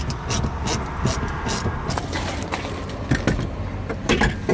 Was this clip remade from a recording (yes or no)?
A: no